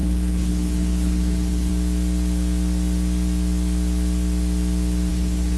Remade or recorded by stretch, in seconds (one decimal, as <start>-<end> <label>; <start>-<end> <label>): 0.0-1.7 remade; 1.7-5.1 recorded; 5.1-5.6 remade